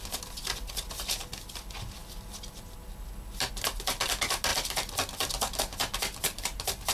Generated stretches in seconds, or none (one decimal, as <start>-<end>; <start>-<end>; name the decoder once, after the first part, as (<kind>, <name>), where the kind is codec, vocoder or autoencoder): none

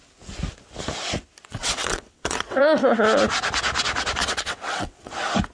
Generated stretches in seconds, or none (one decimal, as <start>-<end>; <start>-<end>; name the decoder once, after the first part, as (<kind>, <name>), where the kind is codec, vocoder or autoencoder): 1.5-2.6 (vocoder, WaveNeXt); 4.2-5.1

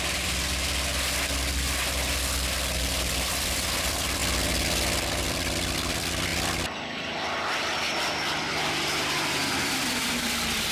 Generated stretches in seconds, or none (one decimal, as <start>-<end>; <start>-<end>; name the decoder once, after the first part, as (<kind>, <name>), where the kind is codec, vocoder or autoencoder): 0.0-4.2 (vocoder, BigVGAN v2); 5.0-10.7

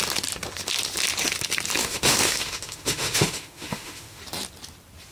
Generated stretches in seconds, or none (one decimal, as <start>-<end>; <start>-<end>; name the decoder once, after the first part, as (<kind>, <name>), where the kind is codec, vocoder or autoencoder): 1.8-4.2 (autoencoder, DAC-VAE)

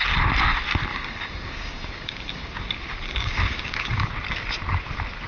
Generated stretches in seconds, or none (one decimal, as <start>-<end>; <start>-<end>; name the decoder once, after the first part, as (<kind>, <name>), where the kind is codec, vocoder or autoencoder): 0.9-4.1 (codec, DAC)